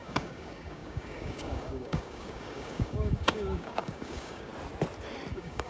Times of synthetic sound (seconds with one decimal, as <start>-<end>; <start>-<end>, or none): 0.0-4.5; 5.3-5.7